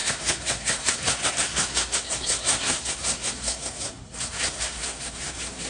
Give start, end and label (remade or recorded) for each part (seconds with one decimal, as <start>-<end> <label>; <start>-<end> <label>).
0.0-5.7 remade